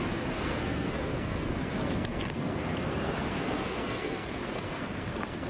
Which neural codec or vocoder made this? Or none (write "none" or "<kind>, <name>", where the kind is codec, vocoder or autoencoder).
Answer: codec, SNAC